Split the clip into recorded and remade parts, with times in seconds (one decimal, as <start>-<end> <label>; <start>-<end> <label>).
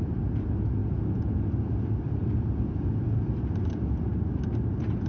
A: 0.0-5.1 recorded